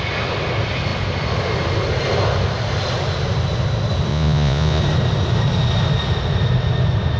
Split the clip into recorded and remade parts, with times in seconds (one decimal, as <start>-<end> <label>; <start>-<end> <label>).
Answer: 0.0-4.1 recorded; 4.1-4.8 remade; 4.8-7.2 recorded